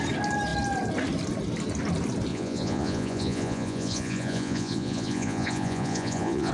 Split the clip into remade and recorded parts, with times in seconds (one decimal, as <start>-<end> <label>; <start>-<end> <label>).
0.0-2.3 recorded; 2.3-6.5 remade